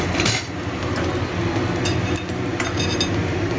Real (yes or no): yes